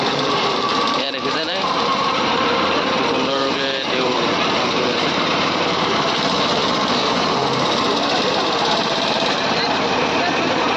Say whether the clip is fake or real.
fake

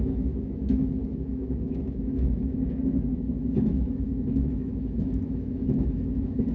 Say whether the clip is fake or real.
fake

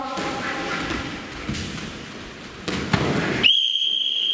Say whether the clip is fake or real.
fake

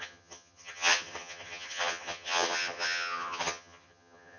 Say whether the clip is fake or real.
fake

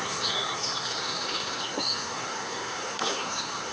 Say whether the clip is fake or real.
fake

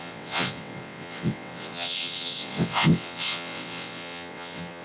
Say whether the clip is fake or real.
fake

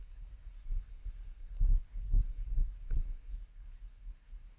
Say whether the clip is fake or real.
fake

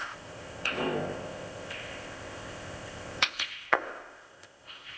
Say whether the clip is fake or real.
fake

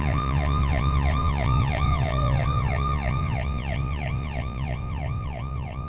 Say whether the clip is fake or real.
fake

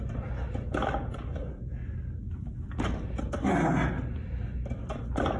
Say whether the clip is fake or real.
real